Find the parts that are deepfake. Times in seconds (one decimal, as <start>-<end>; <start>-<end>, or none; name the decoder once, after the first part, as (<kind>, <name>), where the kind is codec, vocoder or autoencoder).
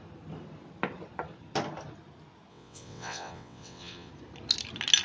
2.5-4.1 (vocoder, WaveNeXt)